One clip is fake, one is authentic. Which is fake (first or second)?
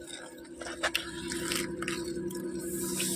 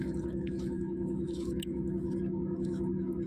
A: second